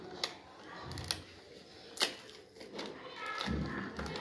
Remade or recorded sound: recorded